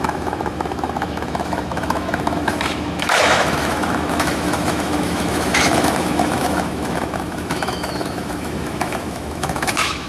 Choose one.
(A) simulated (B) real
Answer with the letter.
A